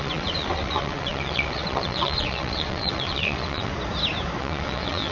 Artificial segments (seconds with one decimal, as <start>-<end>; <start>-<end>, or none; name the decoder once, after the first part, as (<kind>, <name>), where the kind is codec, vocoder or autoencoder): 0.0-3.7 (vocoder, WaveNeXt); 4.4-5.1